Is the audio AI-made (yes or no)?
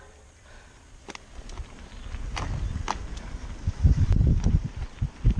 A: no